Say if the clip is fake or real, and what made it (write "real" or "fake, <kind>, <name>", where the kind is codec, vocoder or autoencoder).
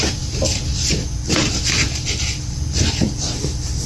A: real